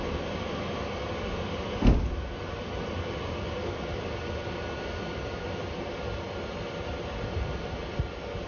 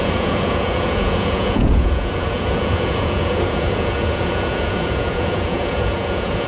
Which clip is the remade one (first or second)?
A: second